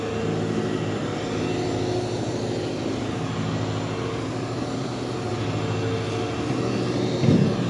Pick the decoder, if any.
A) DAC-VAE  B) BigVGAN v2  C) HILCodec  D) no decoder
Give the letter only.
D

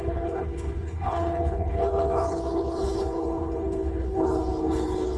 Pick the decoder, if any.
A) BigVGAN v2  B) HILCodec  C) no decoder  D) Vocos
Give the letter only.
B